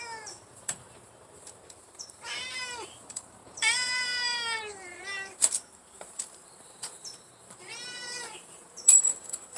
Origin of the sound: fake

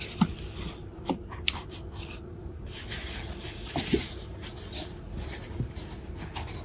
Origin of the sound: real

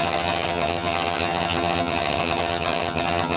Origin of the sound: fake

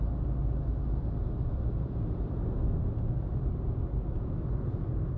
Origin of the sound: real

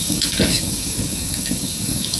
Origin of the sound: fake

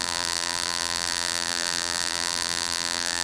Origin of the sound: fake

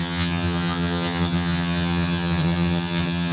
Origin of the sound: fake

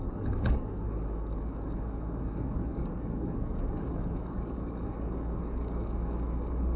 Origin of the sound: fake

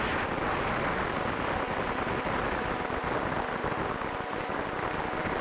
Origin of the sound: real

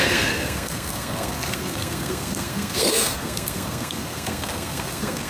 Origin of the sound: fake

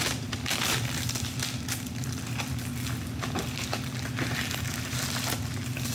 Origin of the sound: real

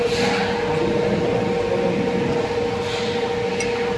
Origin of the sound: real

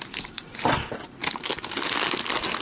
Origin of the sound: real